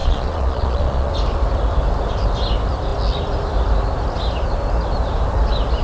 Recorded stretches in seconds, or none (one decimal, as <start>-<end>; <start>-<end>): 1.1-5.8